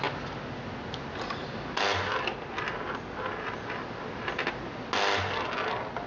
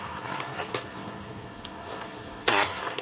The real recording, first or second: first